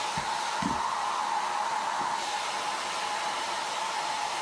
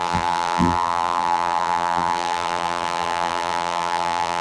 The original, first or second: first